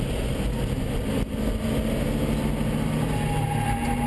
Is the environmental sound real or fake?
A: real